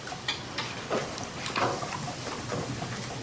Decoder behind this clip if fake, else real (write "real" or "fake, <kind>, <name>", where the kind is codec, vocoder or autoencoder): real